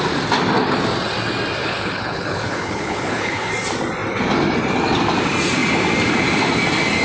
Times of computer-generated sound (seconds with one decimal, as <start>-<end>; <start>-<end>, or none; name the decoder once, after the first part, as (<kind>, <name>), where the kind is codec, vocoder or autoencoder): 1.6-3.5 (codec, HILCodec)